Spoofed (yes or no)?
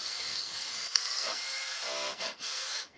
yes